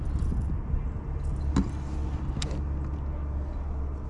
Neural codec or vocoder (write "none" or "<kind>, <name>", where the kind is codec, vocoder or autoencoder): none